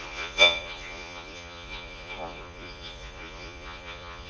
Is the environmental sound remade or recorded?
remade